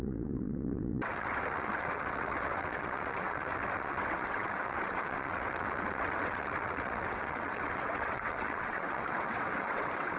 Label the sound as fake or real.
fake